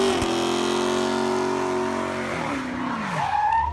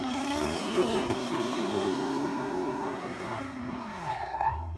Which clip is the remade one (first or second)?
second